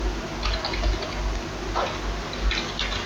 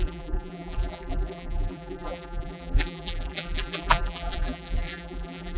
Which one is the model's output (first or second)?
second